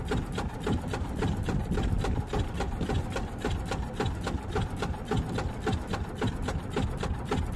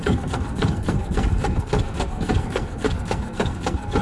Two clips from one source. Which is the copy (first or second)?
second